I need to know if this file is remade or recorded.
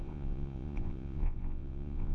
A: remade